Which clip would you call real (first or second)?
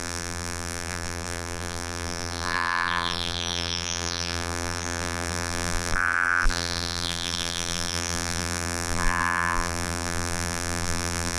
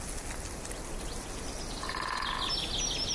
second